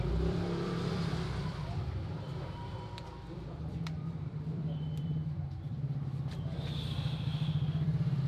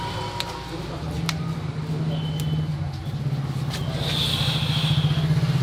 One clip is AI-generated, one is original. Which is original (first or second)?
second